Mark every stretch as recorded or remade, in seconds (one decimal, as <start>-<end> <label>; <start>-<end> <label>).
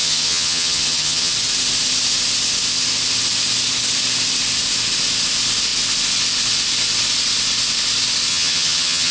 0.0-1.3 remade; 1.3-8.3 recorded; 8.3-9.1 remade